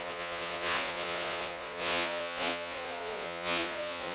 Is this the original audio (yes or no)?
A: no